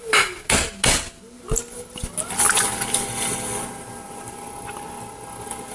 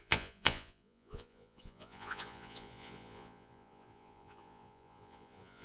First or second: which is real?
first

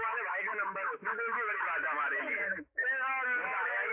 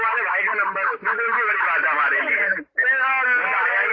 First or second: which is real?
second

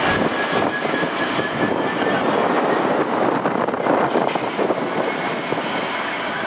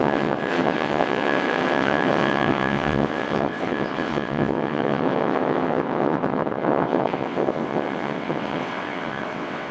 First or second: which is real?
first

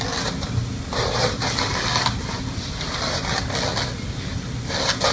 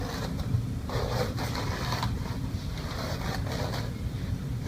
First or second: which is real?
first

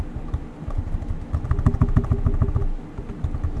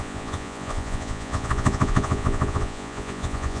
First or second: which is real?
first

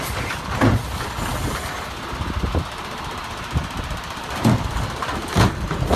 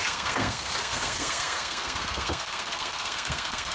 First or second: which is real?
first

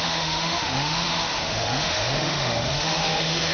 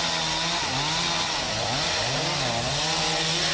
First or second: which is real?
second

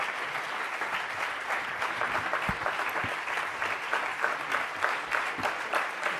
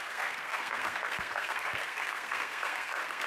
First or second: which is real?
first